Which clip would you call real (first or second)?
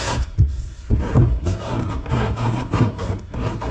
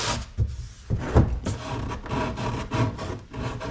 second